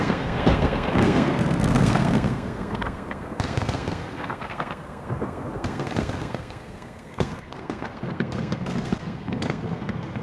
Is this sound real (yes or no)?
no